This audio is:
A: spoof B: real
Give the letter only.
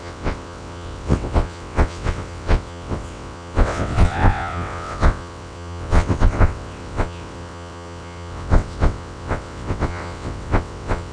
A